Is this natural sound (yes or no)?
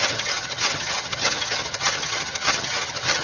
no